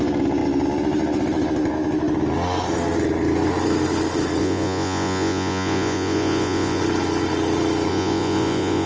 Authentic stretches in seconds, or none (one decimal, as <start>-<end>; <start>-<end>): 0.0-4.4; 6.8-7.9